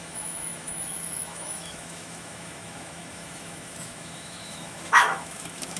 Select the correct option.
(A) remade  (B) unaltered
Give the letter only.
A